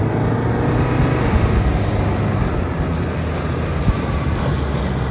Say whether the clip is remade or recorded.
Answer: recorded